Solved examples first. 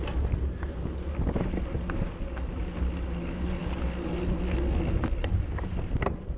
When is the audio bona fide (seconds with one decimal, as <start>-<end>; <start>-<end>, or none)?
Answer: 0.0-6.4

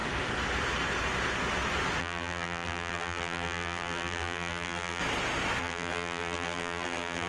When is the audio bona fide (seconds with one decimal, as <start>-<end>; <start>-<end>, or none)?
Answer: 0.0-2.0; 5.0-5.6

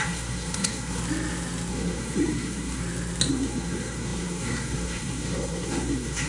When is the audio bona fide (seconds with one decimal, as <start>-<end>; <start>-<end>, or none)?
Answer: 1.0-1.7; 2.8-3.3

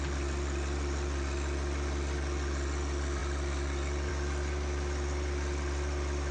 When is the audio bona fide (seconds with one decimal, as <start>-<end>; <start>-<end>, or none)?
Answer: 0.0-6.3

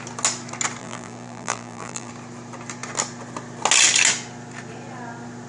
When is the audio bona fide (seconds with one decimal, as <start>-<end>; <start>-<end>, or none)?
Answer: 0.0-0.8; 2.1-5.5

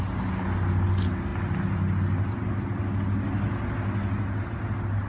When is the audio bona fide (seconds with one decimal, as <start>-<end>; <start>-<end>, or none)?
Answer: 0.0-5.1